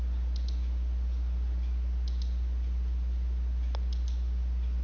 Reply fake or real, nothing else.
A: real